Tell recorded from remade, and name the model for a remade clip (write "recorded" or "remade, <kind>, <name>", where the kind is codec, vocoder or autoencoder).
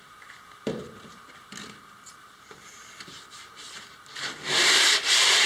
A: remade, vocoder, BigVGAN v2